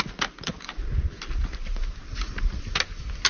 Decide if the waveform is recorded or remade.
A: recorded